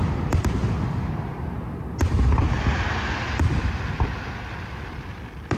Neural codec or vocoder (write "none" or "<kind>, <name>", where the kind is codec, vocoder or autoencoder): none